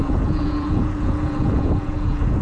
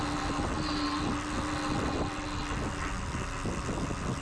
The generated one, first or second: first